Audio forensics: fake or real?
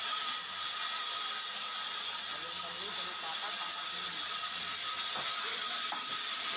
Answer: real